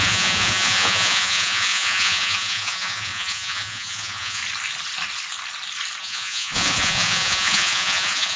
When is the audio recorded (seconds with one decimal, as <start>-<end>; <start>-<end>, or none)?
4.4-6.0